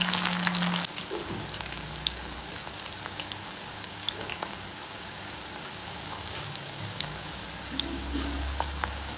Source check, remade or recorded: remade